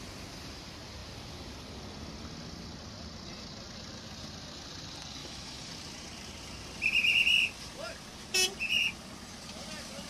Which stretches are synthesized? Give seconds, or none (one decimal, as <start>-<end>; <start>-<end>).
5.2-5.7